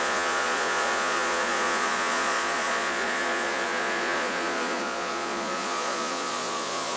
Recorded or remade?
remade